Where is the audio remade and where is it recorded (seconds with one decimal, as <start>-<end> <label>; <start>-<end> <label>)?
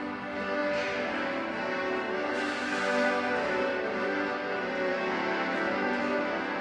0.0-4.9 recorded; 4.9-6.0 remade; 6.0-6.6 recorded